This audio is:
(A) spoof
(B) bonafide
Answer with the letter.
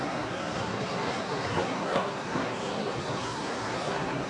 A